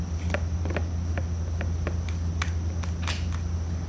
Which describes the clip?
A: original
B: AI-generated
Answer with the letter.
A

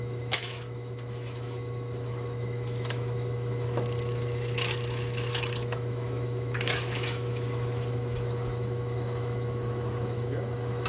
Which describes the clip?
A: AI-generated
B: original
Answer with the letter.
A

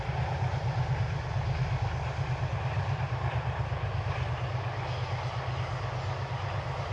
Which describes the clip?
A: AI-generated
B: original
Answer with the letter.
B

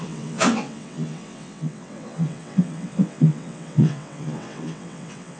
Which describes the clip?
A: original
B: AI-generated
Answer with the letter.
B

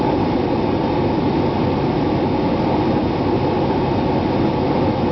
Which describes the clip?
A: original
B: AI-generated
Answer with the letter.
A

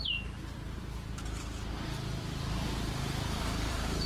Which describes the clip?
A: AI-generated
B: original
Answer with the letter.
A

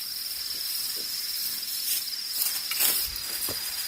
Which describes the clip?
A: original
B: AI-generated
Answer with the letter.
A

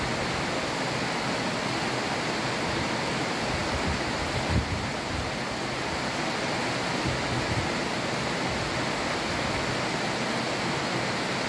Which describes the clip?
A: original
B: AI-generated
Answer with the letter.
A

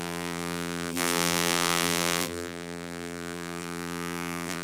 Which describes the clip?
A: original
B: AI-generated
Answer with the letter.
B